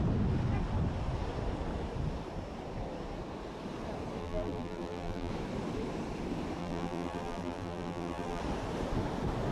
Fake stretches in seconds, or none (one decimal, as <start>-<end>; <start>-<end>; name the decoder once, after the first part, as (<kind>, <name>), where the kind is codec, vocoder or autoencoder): 4.2-5.3 (vocoder, BigVGAN v2); 6.6-8.4